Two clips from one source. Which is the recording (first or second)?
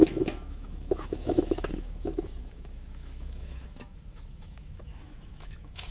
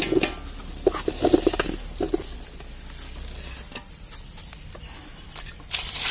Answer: second